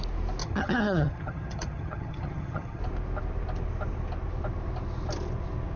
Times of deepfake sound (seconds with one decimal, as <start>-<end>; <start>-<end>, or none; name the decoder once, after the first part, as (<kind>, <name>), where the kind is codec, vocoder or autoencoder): 0.4-2.8 (vocoder, HiFi-GAN)